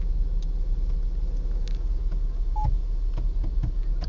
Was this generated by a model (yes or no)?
no